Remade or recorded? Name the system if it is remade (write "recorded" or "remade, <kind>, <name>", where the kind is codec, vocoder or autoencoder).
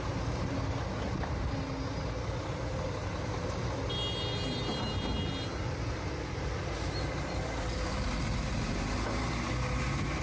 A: recorded